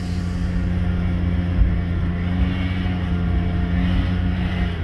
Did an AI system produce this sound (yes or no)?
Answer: no